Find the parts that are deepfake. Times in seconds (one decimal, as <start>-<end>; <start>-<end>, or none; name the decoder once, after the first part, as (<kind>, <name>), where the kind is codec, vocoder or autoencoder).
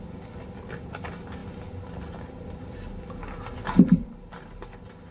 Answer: none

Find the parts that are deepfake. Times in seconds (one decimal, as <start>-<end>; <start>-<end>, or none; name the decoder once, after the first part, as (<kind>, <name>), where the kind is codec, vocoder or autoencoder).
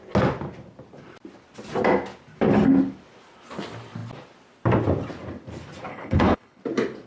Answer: 5.9-6.6 (codec, HILCodec)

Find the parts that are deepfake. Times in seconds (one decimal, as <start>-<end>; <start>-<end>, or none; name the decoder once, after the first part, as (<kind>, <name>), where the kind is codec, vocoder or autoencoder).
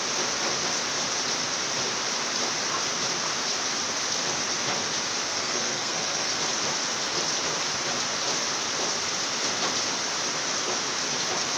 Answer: 5.2-6.3 (codec, SNAC)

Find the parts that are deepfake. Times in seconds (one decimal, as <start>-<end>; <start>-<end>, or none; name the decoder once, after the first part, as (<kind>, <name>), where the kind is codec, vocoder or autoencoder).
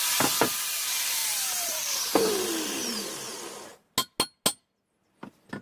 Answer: 1.2-3.1 (vocoder, BigVGAN v2)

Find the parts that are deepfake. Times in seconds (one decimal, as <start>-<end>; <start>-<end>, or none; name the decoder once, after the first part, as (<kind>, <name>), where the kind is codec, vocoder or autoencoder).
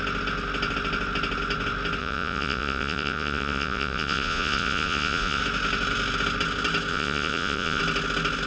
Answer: 2.0-5.4 (vocoder, Vocos); 6.9-7.8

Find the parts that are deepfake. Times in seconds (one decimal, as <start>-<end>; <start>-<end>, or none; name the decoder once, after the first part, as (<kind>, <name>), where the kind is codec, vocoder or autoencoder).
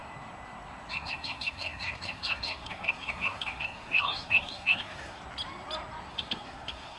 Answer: 0.9-5.2 (codec, SNAC); 6.1-7.0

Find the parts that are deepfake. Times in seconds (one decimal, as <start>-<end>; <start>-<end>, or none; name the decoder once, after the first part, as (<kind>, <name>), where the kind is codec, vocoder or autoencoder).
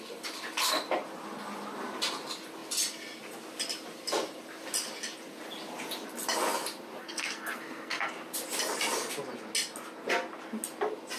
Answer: 7.0-8.1 (codec, SNAC)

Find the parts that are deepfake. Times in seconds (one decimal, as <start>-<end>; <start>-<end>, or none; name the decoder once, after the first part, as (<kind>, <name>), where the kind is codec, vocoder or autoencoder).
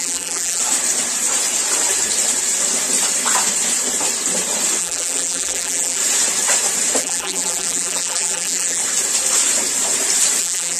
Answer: 0.0-0.6 (vocoder, BigVGAN v2); 4.8-6.0; 7.0-8.8; 10.4-10.8